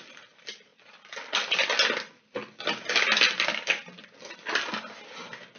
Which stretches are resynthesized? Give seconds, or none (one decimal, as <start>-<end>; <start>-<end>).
none